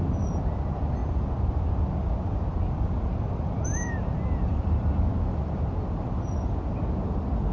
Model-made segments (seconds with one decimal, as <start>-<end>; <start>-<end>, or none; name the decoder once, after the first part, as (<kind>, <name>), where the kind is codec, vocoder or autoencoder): 1.0-3.9 (vocoder, BigVGAN v2)